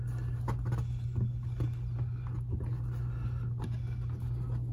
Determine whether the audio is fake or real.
real